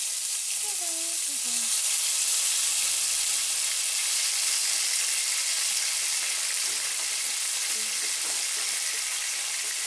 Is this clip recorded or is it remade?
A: recorded